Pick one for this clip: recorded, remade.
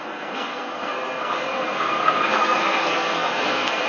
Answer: remade